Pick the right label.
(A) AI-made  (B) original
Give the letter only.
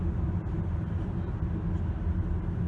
B